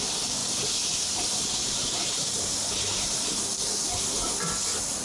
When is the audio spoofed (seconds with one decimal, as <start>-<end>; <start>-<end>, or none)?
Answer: 0.4-3.4